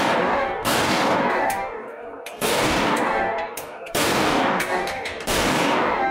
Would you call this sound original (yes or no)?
no